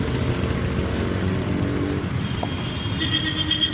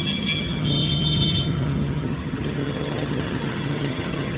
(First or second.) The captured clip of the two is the first